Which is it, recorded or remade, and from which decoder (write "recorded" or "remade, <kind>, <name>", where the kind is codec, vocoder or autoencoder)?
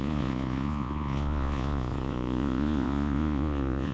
remade, vocoder, Vocos